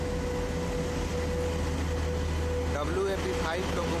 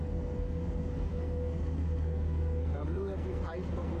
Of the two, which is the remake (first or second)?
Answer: second